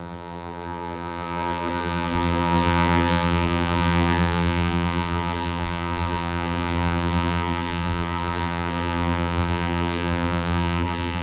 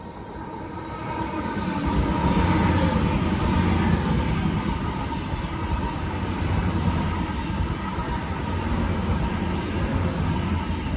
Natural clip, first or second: second